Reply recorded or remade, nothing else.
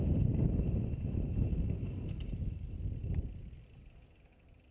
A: recorded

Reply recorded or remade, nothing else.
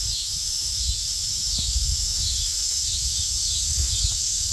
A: remade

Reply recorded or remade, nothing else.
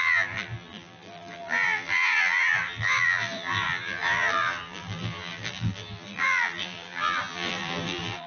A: remade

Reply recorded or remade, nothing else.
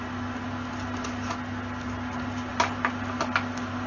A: recorded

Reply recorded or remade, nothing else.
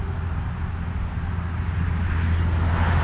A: recorded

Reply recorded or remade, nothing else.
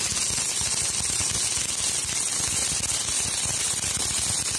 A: recorded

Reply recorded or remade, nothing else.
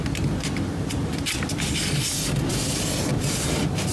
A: remade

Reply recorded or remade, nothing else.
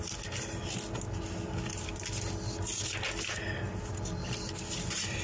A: recorded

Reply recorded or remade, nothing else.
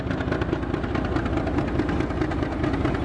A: recorded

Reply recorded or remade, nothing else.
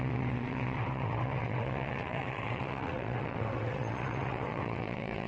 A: remade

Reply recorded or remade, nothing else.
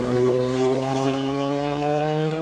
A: remade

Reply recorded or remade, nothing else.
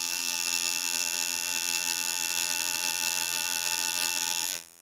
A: remade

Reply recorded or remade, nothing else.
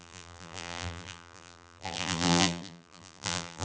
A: remade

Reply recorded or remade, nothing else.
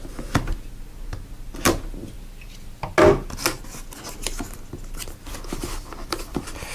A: recorded